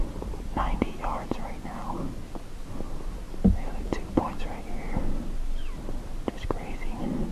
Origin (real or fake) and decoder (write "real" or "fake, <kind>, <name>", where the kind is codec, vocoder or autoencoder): real